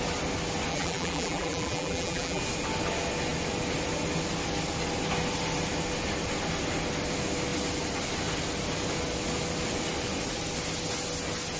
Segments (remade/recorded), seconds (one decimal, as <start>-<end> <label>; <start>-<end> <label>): 0.0-0.7 recorded; 0.7-2.4 remade; 2.4-11.6 recorded